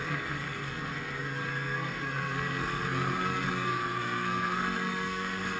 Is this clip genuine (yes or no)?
no